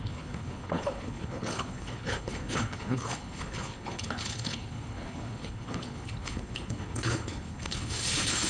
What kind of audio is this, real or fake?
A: fake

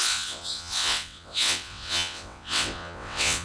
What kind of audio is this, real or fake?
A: fake